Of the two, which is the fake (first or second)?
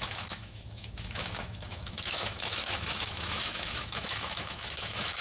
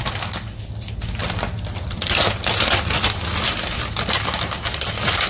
first